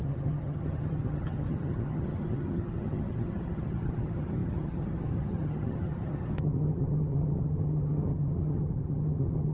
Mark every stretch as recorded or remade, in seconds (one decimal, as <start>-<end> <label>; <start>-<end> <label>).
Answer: 0.0-9.5 remade